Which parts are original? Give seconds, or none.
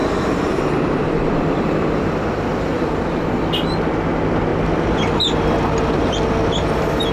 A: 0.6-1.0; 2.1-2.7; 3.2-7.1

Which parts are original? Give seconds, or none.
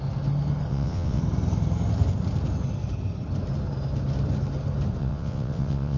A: 0.0-0.7; 1.2-5.0